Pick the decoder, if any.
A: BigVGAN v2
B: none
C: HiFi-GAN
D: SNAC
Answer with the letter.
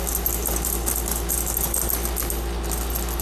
B